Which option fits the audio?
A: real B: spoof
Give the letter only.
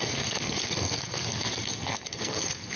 B